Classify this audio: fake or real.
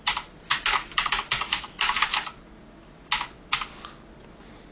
real